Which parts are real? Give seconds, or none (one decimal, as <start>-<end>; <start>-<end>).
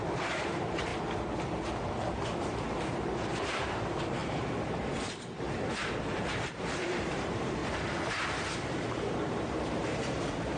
0.9-1.9; 7.6-9.1